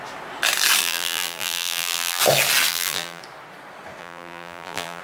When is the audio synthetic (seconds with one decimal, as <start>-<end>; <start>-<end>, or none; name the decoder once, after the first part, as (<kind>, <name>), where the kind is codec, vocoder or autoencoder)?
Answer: 0.8-2.2 (vocoder, BigVGAN v2); 2.7-3.2; 4.0-5.0